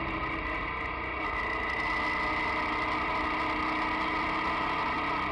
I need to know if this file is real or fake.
real